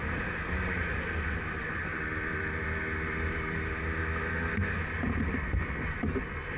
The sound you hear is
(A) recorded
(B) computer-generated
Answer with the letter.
A